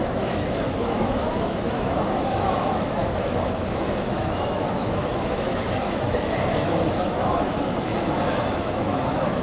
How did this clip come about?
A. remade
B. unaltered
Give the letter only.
A